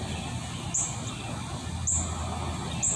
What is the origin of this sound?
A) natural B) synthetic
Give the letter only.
A